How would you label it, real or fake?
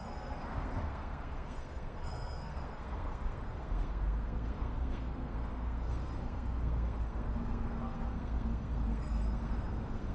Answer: fake